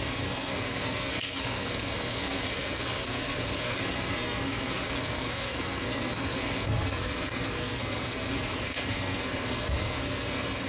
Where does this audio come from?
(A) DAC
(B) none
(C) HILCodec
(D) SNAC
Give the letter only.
D